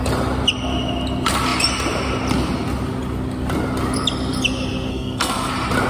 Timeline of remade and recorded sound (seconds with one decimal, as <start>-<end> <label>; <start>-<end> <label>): 0.0-4.9 recorded; 4.9-5.5 remade; 5.5-5.9 recorded

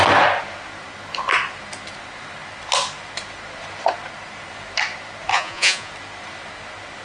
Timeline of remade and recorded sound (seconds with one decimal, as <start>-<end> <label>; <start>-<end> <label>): 0.0-5.3 recorded; 5.3-5.9 remade; 5.9-7.0 recorded